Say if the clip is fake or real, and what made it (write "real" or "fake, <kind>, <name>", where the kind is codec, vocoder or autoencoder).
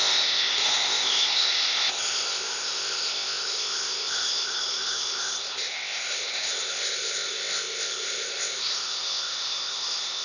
fake, codec, ZipCodec